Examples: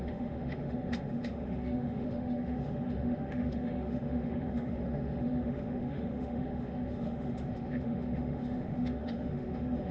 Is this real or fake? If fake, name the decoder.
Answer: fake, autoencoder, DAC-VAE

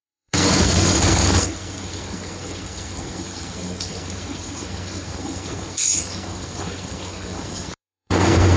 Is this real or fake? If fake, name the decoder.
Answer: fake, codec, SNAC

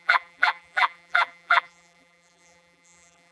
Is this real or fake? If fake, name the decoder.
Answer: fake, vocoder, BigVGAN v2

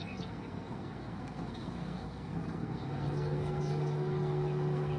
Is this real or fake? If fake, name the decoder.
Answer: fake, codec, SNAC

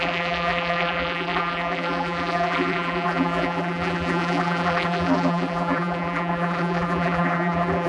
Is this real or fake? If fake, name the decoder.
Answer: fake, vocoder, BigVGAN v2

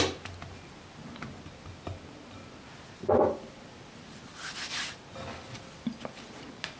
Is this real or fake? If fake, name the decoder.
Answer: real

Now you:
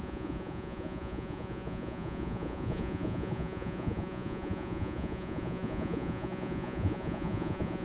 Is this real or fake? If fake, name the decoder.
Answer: fake, vocoder, Vocos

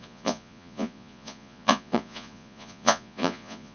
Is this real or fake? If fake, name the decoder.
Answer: fake, vocoder, Vocos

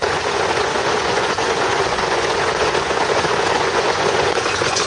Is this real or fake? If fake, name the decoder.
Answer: fake, vocoder, Vocos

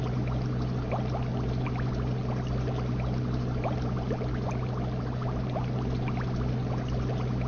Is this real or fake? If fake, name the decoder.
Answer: real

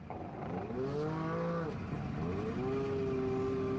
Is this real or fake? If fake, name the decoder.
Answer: real